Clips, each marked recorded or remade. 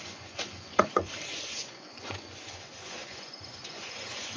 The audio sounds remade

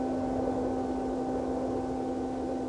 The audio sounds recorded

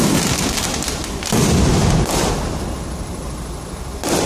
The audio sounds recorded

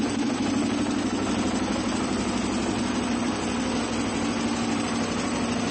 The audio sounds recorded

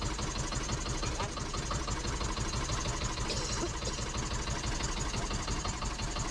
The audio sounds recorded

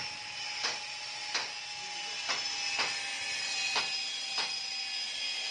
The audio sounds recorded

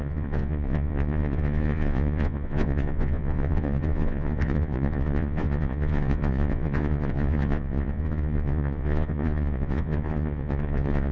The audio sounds remade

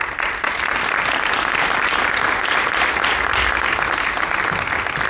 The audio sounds recorded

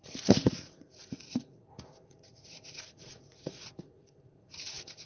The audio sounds remade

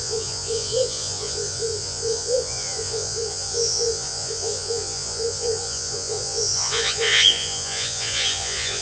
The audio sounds remade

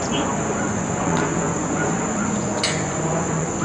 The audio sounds remade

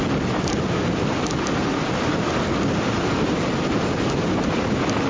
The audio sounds recorded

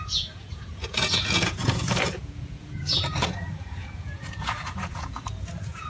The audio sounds remade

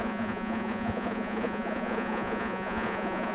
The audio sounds remade